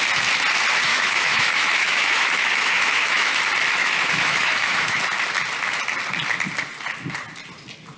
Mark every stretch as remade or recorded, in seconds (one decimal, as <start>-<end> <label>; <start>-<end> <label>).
0.0-0.9 recorded; 0.9-3.4 remade; 3.4-3.8 recorded; 3.8-5.0 remade; 5.0-8.0 recorded